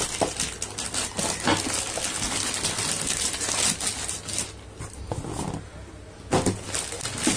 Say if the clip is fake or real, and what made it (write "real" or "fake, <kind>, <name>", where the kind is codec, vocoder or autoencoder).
real